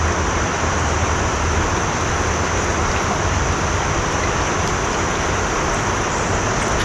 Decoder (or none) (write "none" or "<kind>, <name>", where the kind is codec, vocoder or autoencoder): none